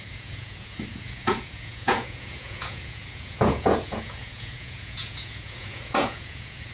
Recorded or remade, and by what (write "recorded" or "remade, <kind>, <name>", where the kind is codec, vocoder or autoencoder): remade, vocoder, Vocos